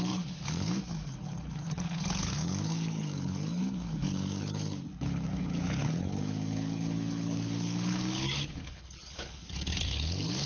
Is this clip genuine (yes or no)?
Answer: no